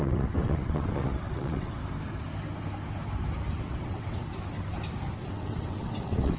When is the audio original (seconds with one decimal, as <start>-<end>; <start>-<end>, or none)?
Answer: 1.8-3.6; 4.2-5.2

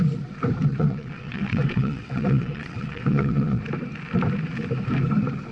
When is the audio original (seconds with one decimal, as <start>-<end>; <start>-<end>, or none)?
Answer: 0.0-0.7; 3.6-5.5

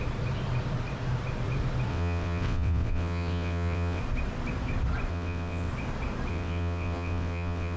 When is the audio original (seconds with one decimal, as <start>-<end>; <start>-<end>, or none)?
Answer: 0.0-1.9; 4.0-5.1; 5.7-6.3

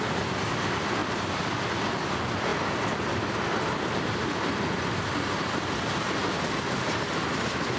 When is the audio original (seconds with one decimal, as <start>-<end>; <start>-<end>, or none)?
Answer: 0.0-7.8

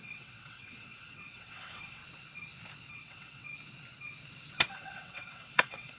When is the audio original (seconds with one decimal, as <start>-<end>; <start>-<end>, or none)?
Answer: 2.0-2.9; 3.5-4.7

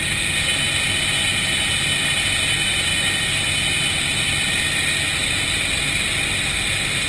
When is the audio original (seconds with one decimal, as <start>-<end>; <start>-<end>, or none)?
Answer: 0.0-7.1

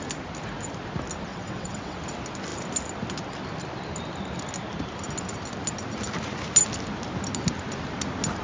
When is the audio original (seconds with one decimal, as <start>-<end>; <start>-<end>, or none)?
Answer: 0.0-1.3; 2.0-8.4